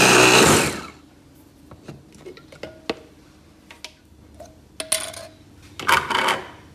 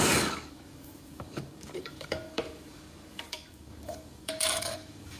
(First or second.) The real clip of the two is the first